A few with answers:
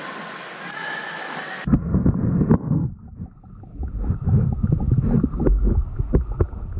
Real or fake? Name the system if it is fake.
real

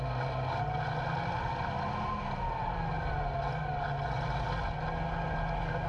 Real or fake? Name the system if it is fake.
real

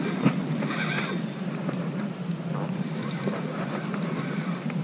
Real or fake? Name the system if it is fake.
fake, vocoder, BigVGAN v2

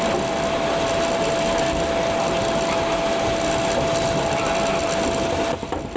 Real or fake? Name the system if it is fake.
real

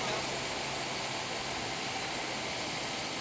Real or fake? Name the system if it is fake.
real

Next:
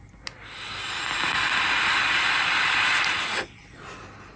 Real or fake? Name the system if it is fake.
real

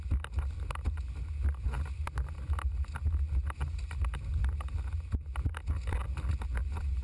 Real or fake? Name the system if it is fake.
real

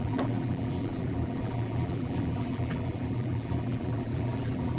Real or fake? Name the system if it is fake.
fake, vocoder, BigVGAN v2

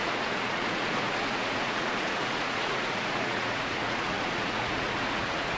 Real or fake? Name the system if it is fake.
fake, vocoder, Vocos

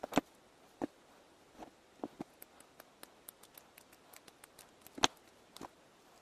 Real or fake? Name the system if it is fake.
real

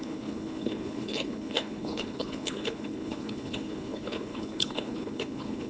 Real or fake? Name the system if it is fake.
fake, codec, HILCodec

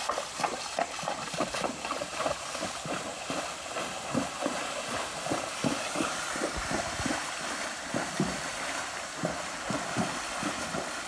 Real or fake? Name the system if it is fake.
real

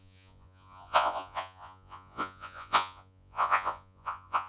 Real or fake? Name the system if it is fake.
fake, vocoder, Vocos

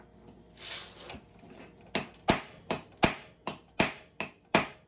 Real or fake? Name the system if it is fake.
real